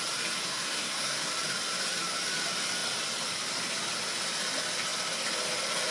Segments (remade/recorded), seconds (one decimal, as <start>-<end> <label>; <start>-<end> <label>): 0.0-0.5 recorded; 0.5-1.3 remade; 1.3-5.9 recorded